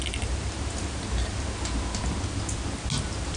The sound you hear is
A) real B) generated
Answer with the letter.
A